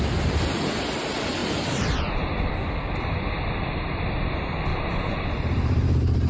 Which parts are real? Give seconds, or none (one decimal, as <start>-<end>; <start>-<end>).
0.0-1.4; 2.5-4.7